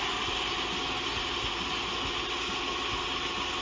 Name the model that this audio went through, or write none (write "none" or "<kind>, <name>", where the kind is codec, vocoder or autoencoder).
none